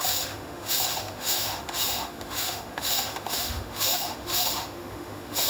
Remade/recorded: remade